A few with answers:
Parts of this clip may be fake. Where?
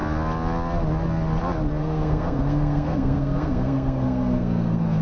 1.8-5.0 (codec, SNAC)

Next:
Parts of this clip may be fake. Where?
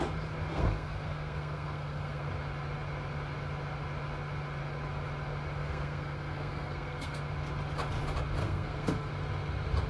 0.5-2.3 (codec, SNAC); 5.6-7.2; 8.4-9.1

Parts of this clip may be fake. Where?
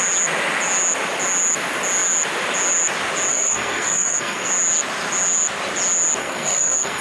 3.3-4.5 (codec, SNAC); 6.2-7.0